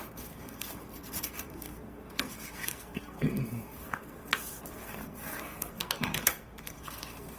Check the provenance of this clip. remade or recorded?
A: remade